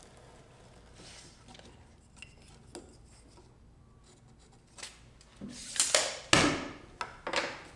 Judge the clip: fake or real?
real